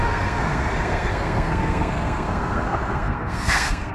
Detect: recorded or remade remade